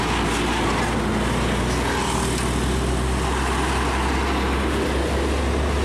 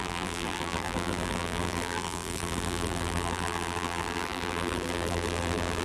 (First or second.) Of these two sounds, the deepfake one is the second